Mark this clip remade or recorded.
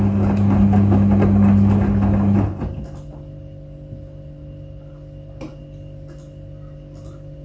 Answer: recorded